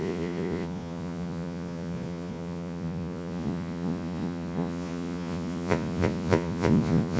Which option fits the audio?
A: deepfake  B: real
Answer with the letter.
A